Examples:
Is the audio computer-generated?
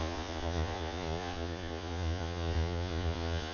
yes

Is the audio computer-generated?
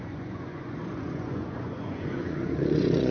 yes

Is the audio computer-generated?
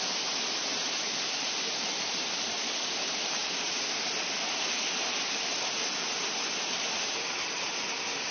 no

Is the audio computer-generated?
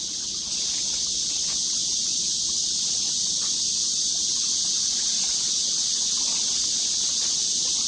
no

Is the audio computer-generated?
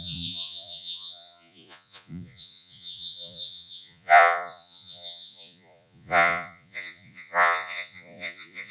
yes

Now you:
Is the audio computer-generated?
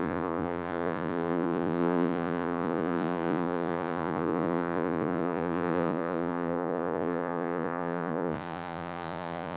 yes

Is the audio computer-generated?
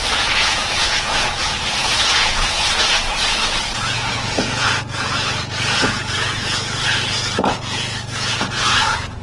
yes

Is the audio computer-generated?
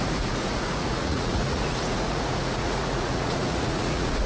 yes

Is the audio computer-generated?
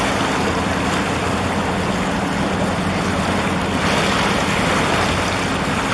no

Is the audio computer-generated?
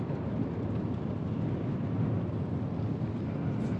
no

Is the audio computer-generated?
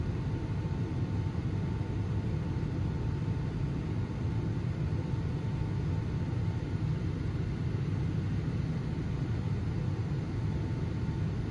no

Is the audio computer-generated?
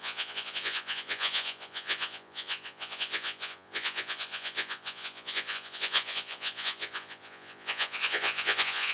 yes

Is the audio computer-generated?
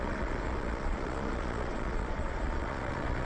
yes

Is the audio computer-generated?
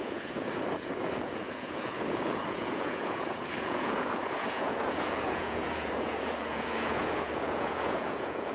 yes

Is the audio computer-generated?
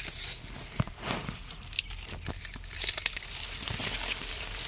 no